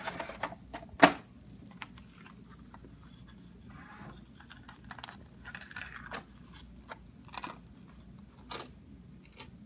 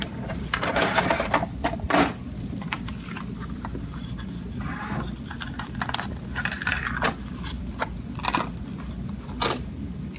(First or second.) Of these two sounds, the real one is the first